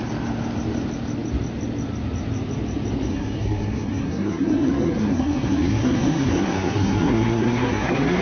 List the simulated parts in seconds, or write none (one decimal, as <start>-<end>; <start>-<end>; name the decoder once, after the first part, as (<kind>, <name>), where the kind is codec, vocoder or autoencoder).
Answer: 3.1-8.2 (codec, SNAC)